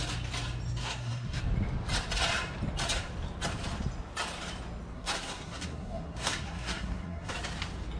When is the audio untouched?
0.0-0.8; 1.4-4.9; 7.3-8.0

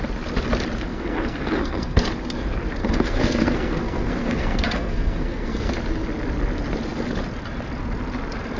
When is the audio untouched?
0.0-0.9; 2.1-2.8; 5.7-8.6

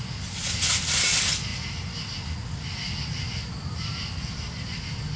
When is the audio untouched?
0.0-5.2

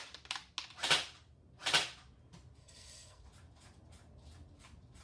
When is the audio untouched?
0.0-2.6; 3.2-5.0

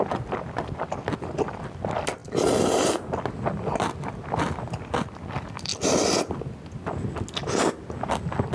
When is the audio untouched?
0.0-8.5

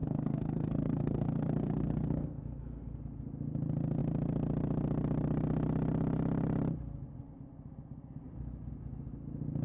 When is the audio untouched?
3.0-9.6